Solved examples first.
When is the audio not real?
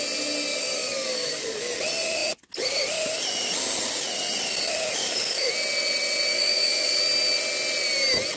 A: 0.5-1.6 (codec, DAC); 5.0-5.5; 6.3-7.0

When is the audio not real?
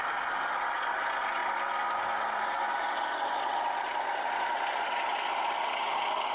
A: none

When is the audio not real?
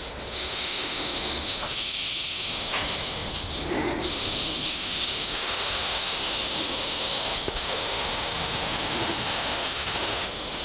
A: 0.0-10.6 (autoencoder, DAC-VAE)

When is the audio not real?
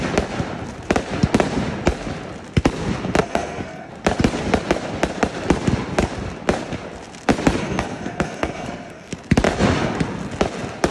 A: 3.2-3.9 (codec, SNAC); 7.6-9.1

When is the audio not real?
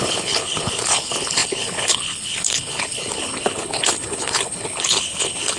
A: 0.0-5.6 (codec, HILCodec)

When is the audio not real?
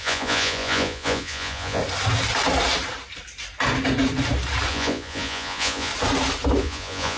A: 0.0-1.8 (vocoder, Vocos); 4.7-5.9; 6.6-7.2